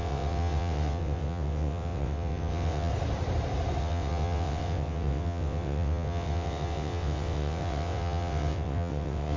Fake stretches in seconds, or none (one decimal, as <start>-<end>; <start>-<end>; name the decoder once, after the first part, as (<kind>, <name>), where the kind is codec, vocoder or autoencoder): 0.0-2.9 (vocoder, WaveNeXt); 3.8-9.4